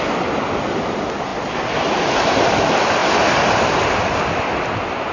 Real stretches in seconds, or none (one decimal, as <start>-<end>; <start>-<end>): 0.0-5.1